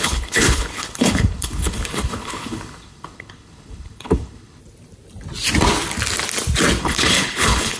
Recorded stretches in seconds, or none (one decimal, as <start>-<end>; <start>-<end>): 4.6-6.8